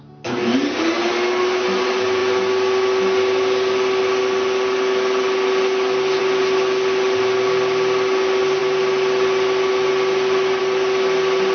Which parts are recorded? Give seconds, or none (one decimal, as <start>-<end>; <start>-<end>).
0.0-11.5